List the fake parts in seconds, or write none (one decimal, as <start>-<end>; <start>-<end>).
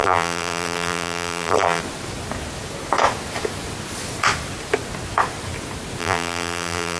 0.0-1.8; 6.0-7.0